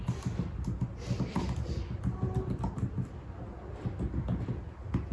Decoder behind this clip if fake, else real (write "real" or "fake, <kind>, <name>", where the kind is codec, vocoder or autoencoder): real